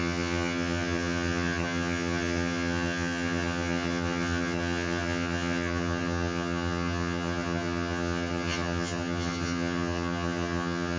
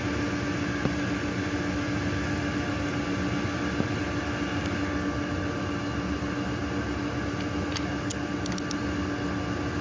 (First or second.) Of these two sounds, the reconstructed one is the first